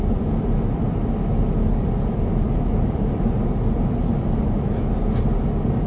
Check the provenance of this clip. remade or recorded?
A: recorded